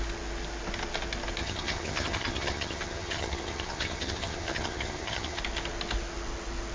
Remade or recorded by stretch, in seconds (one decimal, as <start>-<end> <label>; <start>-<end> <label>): 0.0-1.4 recorded; 1.4-5.4 remade; 5.4-6.7 recorded